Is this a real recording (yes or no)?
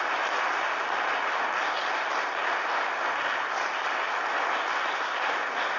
yes